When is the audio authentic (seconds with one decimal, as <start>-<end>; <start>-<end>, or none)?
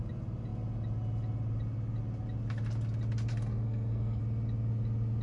0.0-3.3; 4.2-5.2